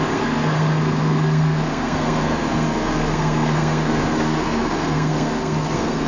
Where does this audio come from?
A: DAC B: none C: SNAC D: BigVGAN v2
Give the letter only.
C